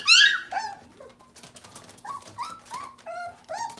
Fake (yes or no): no